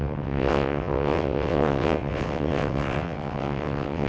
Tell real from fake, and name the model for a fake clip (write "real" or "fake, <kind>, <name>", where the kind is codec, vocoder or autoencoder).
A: fake, vocoder, WaveNeXt